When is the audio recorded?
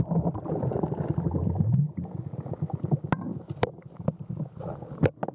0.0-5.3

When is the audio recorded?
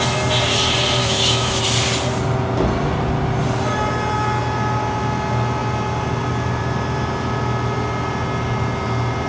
0.0-1.0; 1.6-9.3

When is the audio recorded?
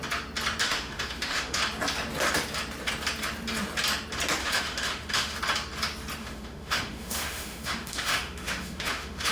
0.0-0.6; 1.6-4.4; 5.4-6.2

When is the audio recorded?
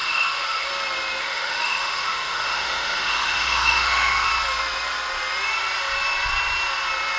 0.7-1.2; 4.3-7.2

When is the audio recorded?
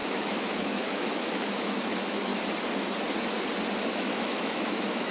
2.3-3.9